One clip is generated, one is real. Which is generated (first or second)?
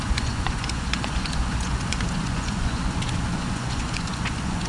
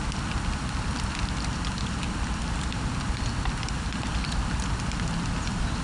first